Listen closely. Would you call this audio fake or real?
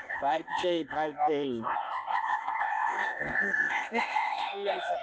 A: fake